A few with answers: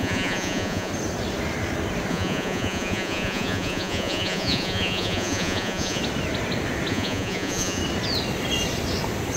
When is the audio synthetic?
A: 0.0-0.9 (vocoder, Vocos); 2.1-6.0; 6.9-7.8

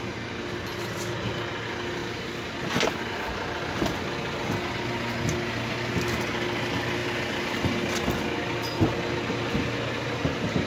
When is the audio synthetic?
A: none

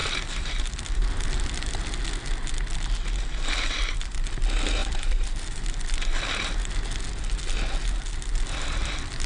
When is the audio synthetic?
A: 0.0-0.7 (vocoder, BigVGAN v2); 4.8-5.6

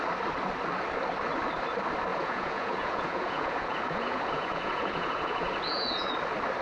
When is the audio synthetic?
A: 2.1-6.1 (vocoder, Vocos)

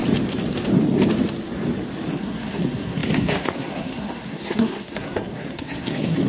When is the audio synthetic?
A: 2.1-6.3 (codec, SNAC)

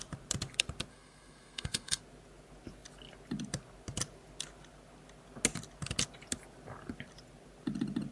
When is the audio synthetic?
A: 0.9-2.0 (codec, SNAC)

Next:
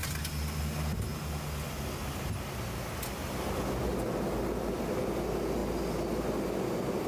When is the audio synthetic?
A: none